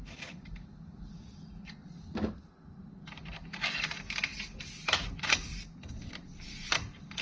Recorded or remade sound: recorded